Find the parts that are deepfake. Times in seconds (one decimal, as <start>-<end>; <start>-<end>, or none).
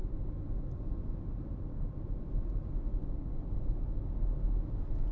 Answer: none